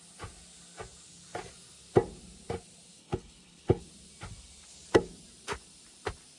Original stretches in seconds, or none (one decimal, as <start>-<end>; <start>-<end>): 0.0-3.0; 3.8-6.4